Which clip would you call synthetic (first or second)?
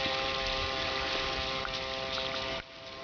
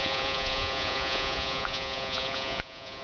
second